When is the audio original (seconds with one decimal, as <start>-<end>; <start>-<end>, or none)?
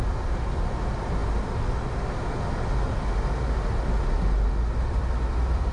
0.0-5.7